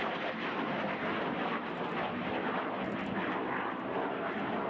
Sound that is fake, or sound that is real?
real